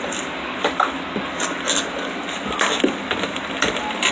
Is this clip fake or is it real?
real